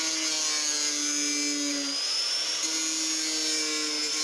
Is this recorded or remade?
recorded